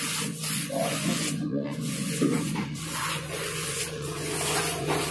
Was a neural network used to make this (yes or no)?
yes